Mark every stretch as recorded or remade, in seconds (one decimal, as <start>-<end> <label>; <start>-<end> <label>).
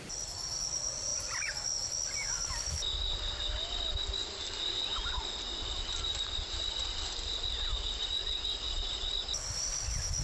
0.0-10.2 recorded